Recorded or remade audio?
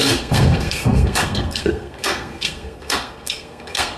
remade